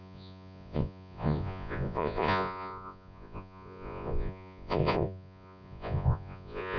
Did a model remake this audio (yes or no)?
yes